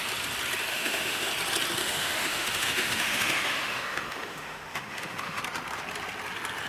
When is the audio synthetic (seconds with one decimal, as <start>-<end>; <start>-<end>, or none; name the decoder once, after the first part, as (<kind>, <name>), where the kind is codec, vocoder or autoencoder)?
0.7-1.3 (autoencoder, DAC-VAE); 1.8-5.4